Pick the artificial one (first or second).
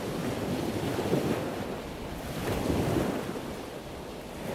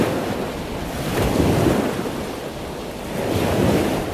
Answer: first